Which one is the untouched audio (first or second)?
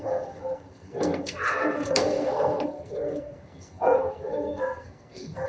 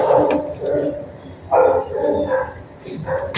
second